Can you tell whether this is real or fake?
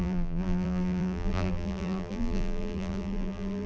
fake